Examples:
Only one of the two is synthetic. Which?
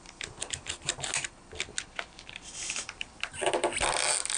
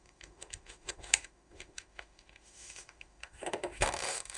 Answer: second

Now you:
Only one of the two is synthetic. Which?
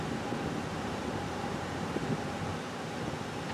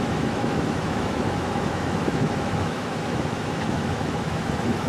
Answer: second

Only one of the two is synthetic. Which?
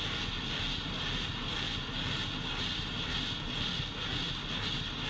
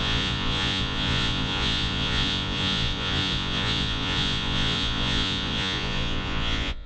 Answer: second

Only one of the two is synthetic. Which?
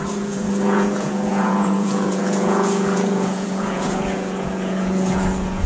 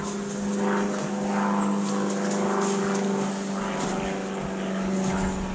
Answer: first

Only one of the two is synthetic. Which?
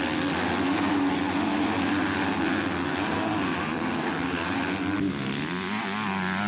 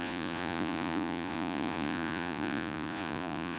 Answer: second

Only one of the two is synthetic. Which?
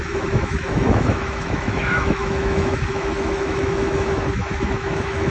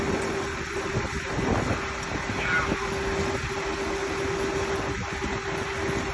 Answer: first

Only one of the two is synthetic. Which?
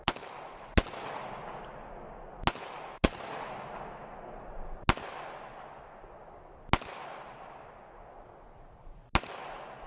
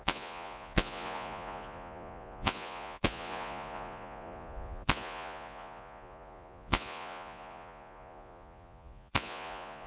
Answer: second